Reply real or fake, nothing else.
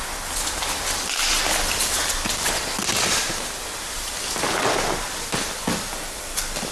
real